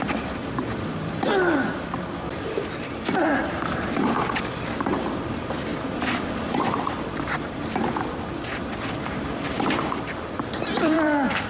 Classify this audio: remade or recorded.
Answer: remade